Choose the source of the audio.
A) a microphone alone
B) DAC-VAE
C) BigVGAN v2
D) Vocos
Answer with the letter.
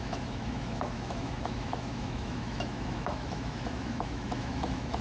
B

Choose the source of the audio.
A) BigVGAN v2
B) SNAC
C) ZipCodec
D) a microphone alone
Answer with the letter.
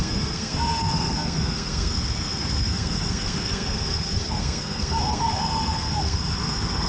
B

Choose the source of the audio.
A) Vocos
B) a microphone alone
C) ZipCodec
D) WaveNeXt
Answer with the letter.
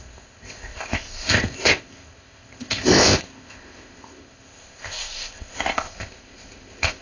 C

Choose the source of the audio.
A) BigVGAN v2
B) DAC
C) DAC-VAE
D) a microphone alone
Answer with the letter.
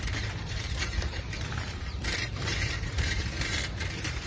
A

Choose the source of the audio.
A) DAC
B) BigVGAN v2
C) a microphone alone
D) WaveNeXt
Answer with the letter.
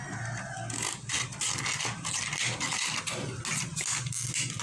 C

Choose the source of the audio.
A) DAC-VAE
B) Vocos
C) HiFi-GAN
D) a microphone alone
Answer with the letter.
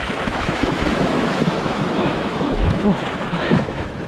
A